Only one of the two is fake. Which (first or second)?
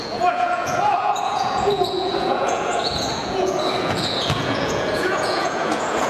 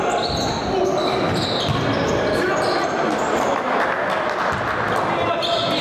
first